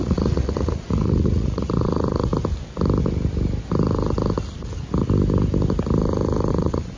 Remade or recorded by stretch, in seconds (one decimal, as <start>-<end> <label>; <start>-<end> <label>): 0.0-2.3 remade; 2.3-6.5 recorded; 6.5-7.0 remade